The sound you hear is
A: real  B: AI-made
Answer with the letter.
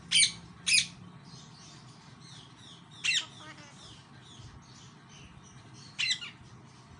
A